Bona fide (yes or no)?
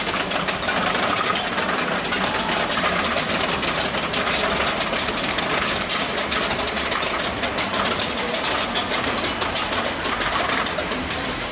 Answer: yes